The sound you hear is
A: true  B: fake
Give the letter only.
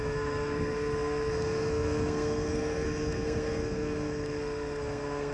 B